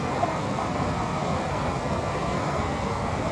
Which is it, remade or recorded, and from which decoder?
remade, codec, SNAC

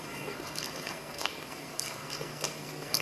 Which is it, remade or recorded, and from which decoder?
remade, codec, SNAC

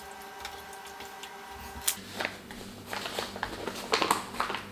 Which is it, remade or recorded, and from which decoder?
recorded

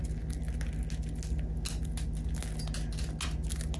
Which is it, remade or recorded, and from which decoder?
recorded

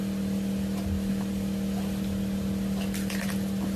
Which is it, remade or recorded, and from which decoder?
recorded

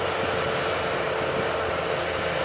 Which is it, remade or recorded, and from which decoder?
recorded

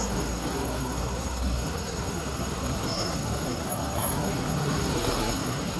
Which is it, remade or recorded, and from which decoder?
remade, codec, SNAC